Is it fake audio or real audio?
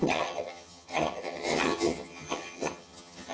fake